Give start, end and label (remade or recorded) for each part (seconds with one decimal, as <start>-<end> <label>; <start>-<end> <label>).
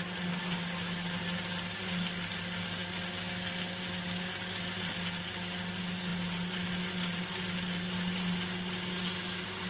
0.0-9.7 recorded